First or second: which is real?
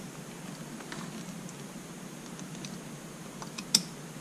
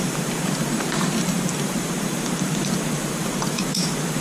first